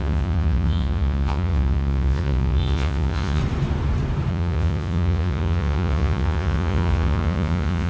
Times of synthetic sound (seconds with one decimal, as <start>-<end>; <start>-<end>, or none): 0.0-3.4; 4.3-7.9